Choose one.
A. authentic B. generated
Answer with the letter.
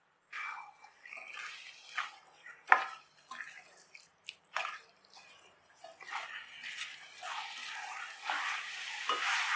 A